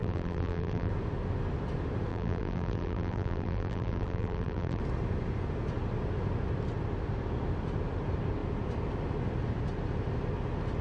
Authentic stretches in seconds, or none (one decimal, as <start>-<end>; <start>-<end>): 0.9-2.1; 4.8-10.8